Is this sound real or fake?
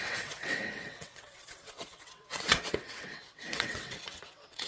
fake